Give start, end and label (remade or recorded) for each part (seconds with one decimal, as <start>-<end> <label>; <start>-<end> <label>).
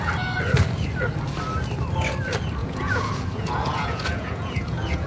0.0-2.6 recorded; 2.6-5.1 remade